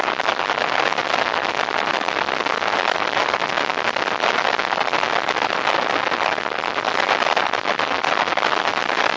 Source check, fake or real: real